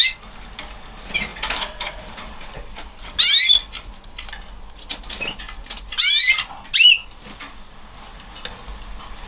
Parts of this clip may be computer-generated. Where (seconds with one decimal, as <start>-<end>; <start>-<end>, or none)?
none